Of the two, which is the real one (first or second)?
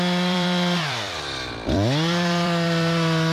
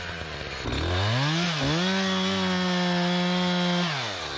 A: second